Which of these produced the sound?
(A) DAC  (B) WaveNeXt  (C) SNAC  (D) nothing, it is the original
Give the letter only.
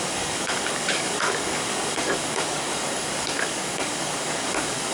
A